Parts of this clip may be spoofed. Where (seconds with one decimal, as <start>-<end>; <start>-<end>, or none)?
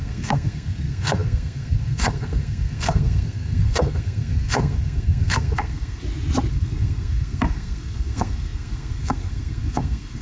0.0-6.0; 6.5-10.2